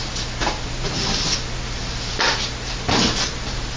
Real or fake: real